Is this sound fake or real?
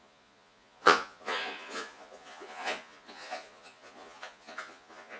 fake